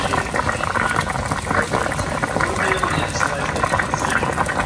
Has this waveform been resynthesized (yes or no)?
no